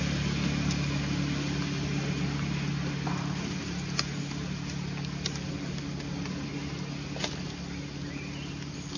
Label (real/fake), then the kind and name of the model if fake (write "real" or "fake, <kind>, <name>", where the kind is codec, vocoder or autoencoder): real